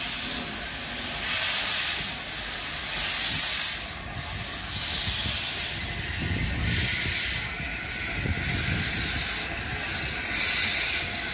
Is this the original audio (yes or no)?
yes